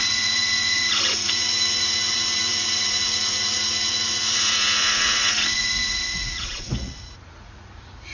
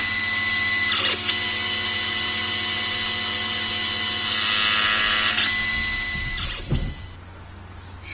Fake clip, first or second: first